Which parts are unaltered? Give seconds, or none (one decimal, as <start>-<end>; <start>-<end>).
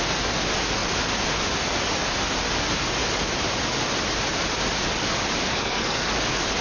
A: 0.0-5.5; 6.1-6.6